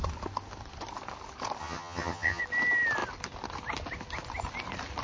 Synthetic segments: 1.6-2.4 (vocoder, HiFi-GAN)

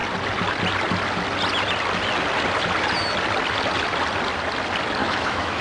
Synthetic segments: 5.0-5.6 (autoencoder, DAC-VAE)

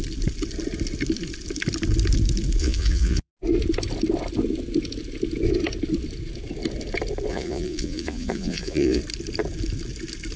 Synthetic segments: 2.6-3.3 (vocoder, Vocos); 7.3-9.0